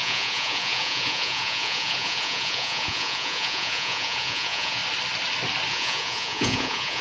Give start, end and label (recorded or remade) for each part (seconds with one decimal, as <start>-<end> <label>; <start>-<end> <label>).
0.0-4.8 remade; 4.8-5.7 recorded; 5.7-7.0 remade